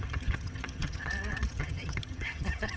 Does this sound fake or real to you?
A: fake